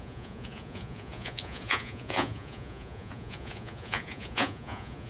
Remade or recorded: remade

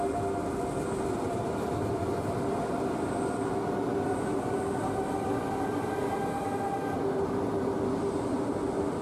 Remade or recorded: recorded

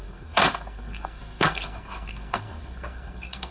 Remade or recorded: remade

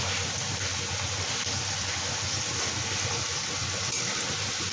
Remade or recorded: recorded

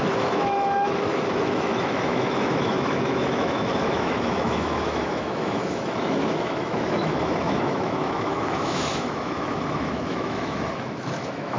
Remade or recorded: remade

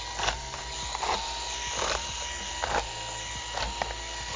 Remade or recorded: recorded